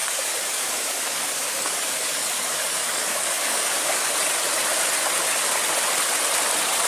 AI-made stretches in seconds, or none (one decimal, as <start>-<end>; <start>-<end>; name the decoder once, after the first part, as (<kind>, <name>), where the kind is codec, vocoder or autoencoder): 0.0-4.1 (codec, DAC)